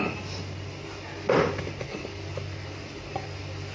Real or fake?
real